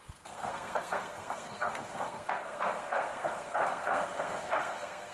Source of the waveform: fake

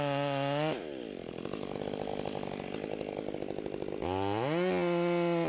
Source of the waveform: real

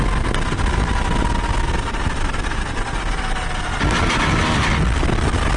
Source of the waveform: real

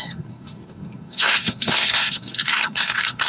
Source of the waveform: fake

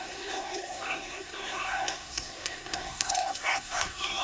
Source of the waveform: fake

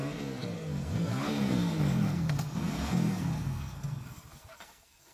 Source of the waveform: fake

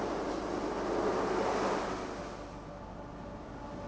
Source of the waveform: real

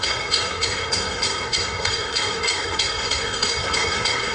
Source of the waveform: fake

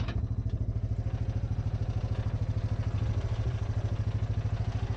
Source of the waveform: real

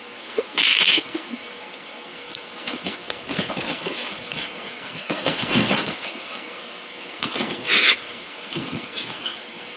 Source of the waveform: fake